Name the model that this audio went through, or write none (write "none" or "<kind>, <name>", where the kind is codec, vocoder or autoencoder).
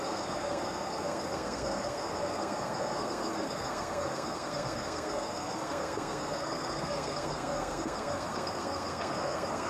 codec, SNAC